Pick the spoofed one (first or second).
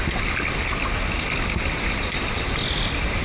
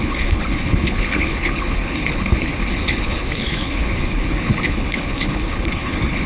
second